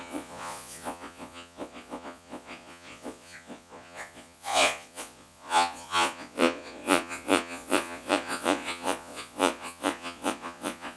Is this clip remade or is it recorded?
remade